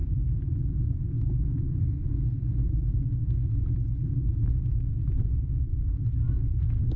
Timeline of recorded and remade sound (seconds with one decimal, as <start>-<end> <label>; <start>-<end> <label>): 0.0-7.0 recorded